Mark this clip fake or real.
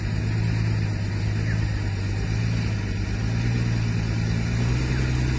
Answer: real